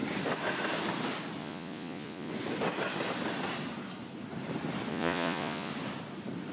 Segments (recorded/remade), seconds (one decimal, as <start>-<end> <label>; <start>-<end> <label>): 0.0-1.4 recorded; 1.4-2.3 remade; 2.3-4.9 recorded; 4.9-5.7 remade; 5.7-6.5 recorded